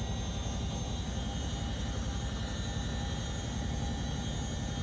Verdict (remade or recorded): recorded